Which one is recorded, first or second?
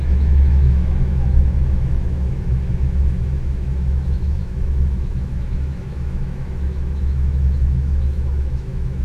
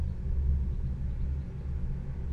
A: second